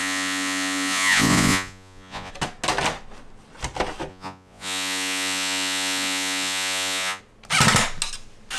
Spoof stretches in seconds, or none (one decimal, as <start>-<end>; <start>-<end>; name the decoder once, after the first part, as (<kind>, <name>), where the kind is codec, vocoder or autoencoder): 0.0-2.3 (vocoder, Vocos); 4.1-7.2